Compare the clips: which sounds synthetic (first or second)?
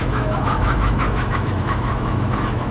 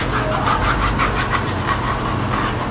first